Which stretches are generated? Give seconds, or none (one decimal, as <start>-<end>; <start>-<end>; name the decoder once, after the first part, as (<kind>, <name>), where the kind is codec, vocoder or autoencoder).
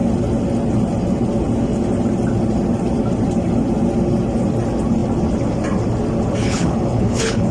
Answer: 6.4-7.5 (codec, HILCodec)